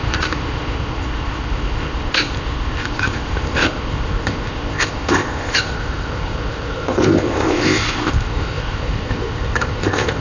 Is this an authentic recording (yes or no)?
no